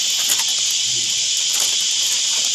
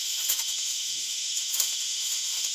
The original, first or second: first